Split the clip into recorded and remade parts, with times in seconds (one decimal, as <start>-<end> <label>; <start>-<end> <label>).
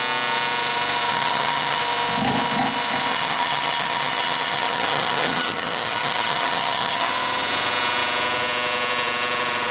0.0-1.1 recorded; 1.1-1.8 remade; 1.8-3.1 recorded; 3.1-7.1 remade; 7.1-9.7 recorded